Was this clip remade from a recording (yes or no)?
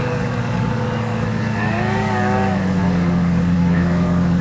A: yes